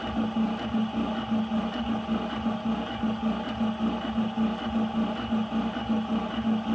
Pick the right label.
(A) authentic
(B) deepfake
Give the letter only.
A